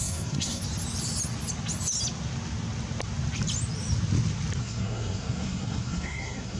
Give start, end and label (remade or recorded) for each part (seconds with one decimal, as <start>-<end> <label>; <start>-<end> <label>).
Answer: 0.0-0.6 remade; 0.6-4.6 recorded; 4.6-6.6 remade